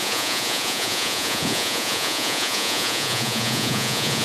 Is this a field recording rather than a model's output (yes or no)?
no